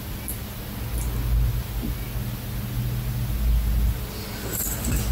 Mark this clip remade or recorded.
recorded